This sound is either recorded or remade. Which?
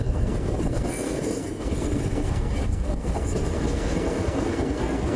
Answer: remade